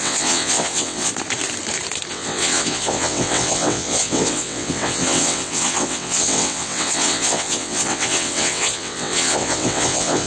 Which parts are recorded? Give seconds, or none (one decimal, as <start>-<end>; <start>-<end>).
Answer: 1.1-2.1